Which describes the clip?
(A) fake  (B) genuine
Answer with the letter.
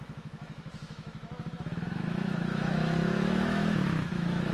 A